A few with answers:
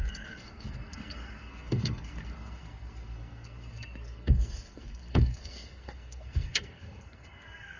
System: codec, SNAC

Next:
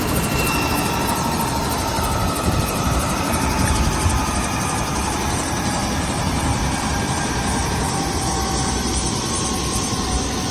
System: none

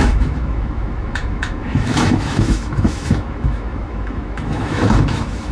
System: autoencoder, DAC-VAE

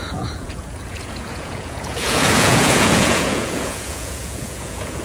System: vocoder, Vocos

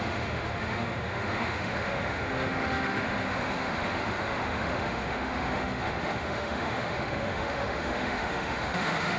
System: autoencoder, DAC-VAE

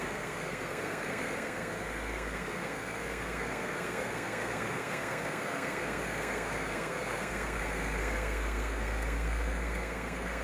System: codec, SNAC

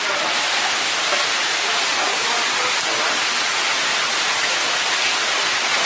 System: none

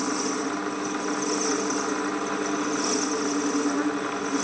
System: none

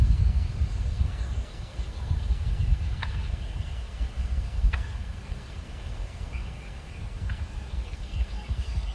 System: codec, SNAC